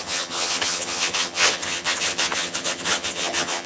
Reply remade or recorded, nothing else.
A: remade